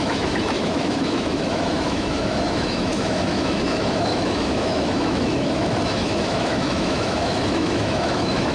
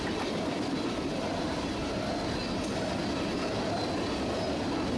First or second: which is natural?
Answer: second